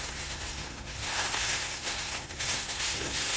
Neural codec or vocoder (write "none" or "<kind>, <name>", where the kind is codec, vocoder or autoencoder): codec, SNAC